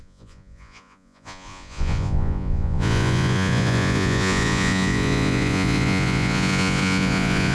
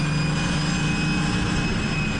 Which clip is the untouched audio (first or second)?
second